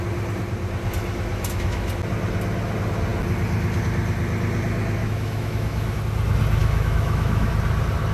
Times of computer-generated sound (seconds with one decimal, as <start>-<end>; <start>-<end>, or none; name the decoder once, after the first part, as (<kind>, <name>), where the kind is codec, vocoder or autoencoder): 1.3-1.9 (autoencoder, DAC-VAE); 5.0-6.0; 6.6-7.5